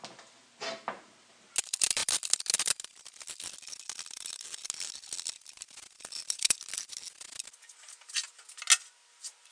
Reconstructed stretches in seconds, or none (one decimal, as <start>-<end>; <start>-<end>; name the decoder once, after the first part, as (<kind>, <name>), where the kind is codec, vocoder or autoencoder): none